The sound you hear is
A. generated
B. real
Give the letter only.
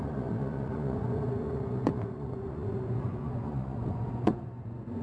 A